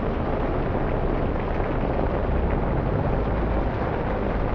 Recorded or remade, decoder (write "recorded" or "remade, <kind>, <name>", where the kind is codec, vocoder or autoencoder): recorded